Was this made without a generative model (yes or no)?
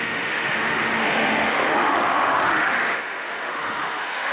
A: no